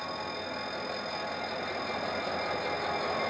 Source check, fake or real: real